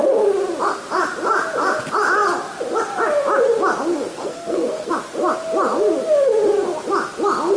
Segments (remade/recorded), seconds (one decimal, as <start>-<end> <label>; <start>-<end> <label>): 0.0-3.9 recorded; 3.9-4.9 remade; 4.9-7.6 recorded